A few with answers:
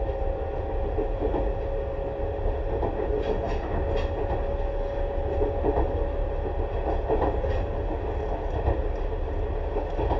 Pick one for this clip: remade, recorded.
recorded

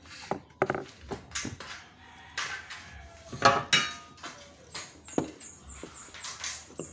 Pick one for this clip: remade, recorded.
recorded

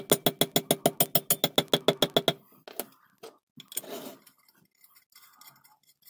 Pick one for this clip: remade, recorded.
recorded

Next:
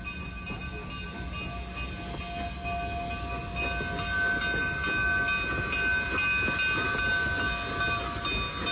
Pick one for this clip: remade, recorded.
recorded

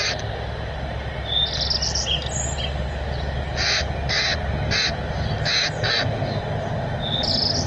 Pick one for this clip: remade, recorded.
recorded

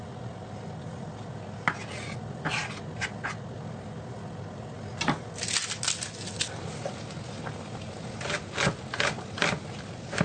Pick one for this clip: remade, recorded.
recorded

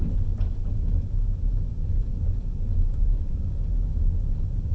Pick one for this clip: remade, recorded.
remade